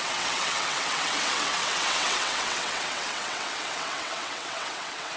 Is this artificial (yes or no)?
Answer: yes